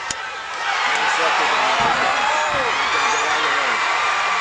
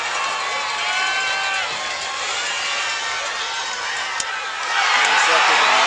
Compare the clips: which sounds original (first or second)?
second